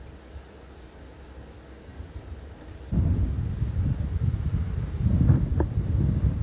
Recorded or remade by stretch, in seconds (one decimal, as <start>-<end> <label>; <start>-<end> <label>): 0.0-6.4 recorded